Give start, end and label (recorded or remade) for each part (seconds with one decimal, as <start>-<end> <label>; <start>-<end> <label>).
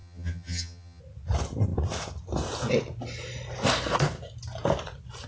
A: 0.0-1.0 remade; 1.0-5.3 recorded